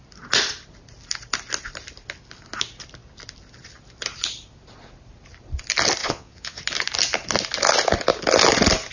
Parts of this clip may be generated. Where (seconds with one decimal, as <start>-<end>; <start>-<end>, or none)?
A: 6.0-6.6